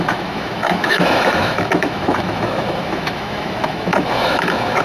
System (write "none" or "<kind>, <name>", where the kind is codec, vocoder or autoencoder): autoencoder, DAC-VAE